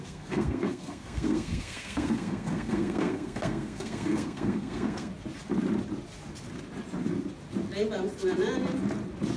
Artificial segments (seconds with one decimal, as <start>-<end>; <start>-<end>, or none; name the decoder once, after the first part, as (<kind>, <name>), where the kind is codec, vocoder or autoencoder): 0.0-5.1 (codec, SNAC)